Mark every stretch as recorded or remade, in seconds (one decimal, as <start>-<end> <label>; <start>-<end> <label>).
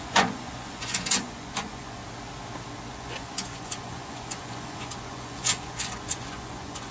0.0-2.0 remade; 2.0-2.9 recorded; 2.9-6.9 remade